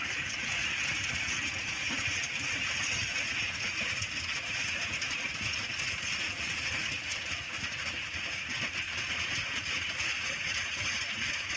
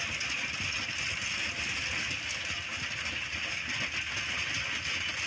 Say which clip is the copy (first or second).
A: first